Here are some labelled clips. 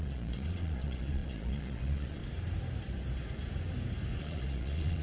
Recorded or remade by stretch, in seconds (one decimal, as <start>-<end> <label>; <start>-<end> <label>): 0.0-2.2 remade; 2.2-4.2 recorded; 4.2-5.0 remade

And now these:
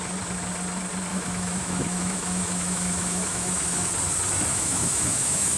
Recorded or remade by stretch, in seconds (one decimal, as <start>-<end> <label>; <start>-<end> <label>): 0.0-1.1 recorded; 1.1-3.9 remade; 3.9-4.5 recorded; 4.5-5.6 remade

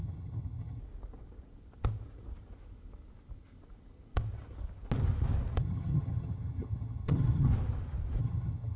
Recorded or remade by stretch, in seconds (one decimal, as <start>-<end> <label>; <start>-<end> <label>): 0.0-0.8 remade; 0.8-5.6 recorded; 5.6-7.5 remade; 7.5-8.2 recorded; 8.2-8.8 remade

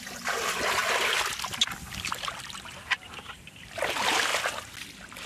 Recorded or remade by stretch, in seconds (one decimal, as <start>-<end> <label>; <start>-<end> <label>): 0.0-0.8 remade; 0.8-3.2 recorded; 3.2-4.3 remade; 4.3-5.3 recorded

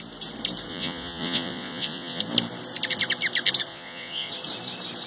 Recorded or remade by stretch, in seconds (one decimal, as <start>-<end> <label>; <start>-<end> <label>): 0.0-0.7 recorded; 0.7-2.2 remade; 2.2-3.7 recorded; 3.7-4.3 remade; 4.3-5.1 recorded

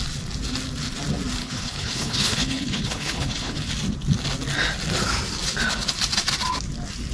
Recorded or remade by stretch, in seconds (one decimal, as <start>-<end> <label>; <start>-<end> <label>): 0.0-1.4 recorded; 1.4-3.7 remade; 3.7-7.1 recorded

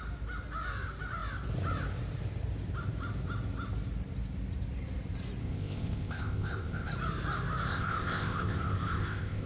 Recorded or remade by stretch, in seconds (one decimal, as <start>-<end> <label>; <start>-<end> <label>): 0.0-5.4 recorded; 5.4-6.9 remade; 6.9-7.7 recorded; 7.7-9.5 remade

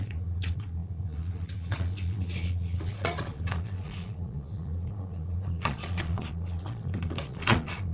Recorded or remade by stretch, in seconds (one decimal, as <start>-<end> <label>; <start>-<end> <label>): 0.0-7.9 remade